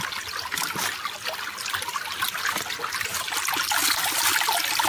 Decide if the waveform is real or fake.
real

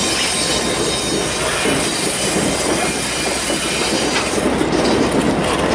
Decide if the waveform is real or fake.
real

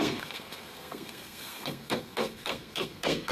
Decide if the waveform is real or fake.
fake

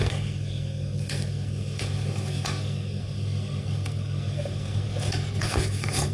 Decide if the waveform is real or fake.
fake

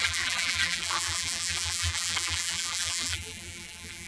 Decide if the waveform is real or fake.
fake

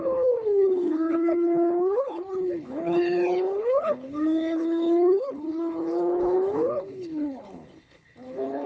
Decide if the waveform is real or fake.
fake